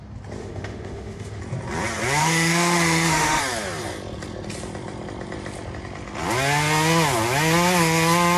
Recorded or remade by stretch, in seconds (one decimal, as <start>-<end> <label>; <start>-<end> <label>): 0.0-0.4 recorded; 0.4-1.4 remade; 1.4-2.2 recorded; 2.2-3.4 remade; 3.4-8.4 recorded